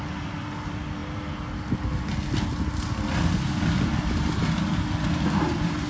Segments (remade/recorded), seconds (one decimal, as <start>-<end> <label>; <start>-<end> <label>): 0.0-5.9 recorded